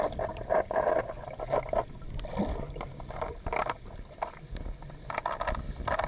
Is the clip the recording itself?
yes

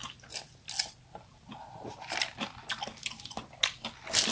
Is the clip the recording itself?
yes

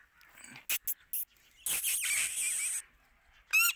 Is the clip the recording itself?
yes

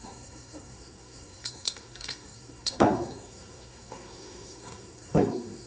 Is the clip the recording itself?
no